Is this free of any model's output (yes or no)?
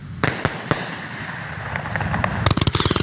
yes